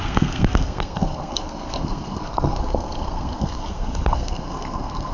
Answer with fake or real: fake